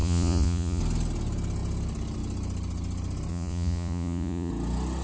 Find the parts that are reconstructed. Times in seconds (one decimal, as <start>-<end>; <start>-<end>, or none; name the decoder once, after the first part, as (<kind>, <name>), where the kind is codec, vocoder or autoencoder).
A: 0.0-0.8 (vocoder, Vocos); 3.3-4.5